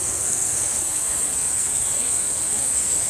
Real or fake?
fake